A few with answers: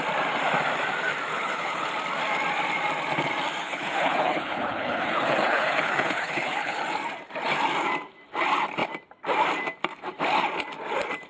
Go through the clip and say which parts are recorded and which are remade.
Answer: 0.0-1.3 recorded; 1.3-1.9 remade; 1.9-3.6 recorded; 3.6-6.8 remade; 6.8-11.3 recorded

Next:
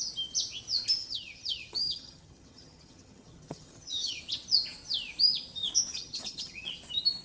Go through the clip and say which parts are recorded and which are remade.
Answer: 0.0-1.0 recorded; 1.0-4.2 remade; 4.2-5.9 recorded; 5.9-6.7 remade; 6.7-7.2 recorded

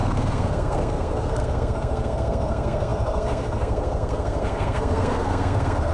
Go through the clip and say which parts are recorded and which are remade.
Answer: 0.0-5.9 remade